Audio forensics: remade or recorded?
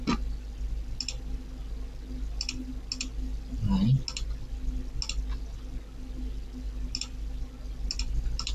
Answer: recorded